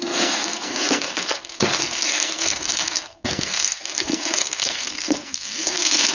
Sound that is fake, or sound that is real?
fake